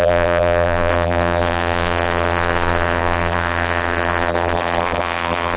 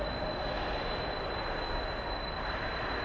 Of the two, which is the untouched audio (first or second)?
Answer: second